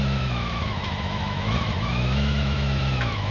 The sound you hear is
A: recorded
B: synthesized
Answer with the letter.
B